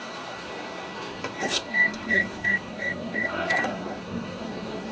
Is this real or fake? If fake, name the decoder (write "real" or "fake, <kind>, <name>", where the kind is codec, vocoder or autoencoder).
fake, codec, SNAC